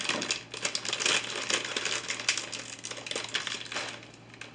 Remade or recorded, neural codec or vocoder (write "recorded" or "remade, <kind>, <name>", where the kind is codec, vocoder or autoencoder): recorded